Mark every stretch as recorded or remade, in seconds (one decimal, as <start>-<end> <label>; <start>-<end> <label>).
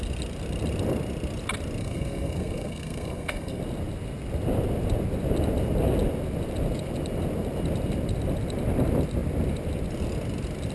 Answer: 0.0-1.8 recorded; 1.8-3.6 remade; 3.6-10.7 recorded